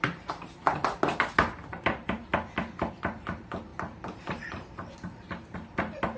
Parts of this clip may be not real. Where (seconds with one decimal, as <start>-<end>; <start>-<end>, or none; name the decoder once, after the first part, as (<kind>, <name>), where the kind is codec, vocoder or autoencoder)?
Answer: 0.0-0.8 (vocoder, BigVGAN v2); 1.7-2.3; 2.9-6.2